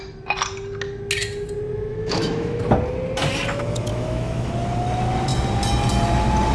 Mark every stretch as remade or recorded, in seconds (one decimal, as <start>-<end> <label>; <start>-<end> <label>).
0.0-1.9 recorded; 1.9-2.6 remade; 2.6-3.9 recorded; 3.9-4.5 remade; 4.5-6.5 recorded